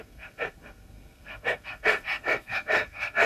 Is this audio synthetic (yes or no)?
yes